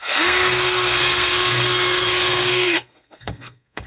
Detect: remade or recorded remade